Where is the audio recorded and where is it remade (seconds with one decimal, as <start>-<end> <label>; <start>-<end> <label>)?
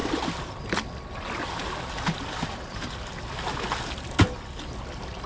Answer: 0.0-5.3 recorded